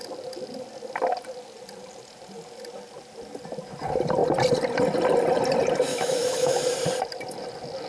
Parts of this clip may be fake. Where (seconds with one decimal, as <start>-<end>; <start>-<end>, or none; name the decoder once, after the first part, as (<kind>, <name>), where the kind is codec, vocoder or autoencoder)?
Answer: 5.9-6.6 (autoencoder, DAC-VAE)